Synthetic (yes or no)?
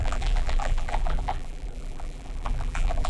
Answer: yes